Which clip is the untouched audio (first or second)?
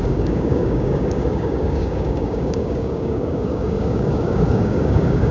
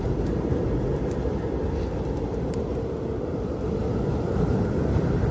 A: second